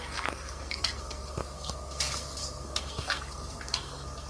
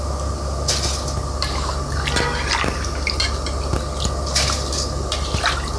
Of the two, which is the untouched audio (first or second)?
second